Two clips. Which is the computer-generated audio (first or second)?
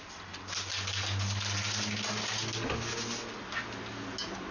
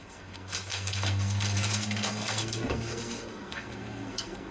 second